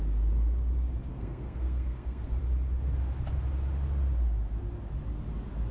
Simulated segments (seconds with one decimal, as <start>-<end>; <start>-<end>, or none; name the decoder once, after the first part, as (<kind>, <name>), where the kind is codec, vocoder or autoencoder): 1.1-2.4 (codec, SNAC)